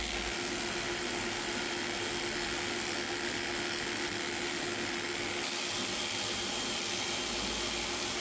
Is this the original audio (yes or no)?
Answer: yes